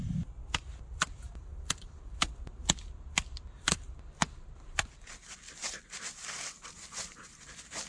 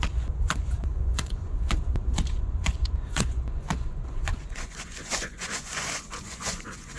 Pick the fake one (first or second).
second